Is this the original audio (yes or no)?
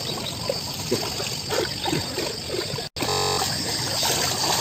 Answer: yes